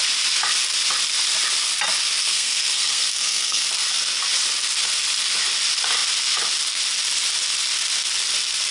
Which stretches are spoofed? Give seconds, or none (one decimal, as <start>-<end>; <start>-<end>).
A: 2.2-3.6